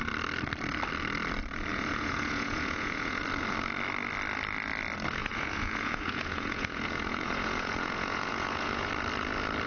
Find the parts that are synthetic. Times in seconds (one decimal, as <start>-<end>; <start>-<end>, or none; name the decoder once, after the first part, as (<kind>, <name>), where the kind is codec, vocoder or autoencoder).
1.7-3.2 (vocoder, Vocos); 5.2-8.9